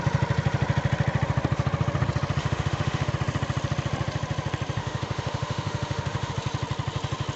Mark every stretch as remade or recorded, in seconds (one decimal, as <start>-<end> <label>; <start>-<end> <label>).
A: 0.0-2.4 recorded; 2.4-3.1 remade; 3.1-4.8 recorded; 4.8-6.3 remade; 6.3-7.4 recorded